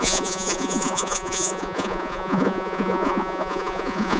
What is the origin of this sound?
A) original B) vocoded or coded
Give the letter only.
B